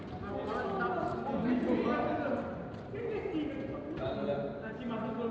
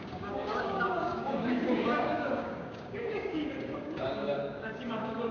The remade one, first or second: second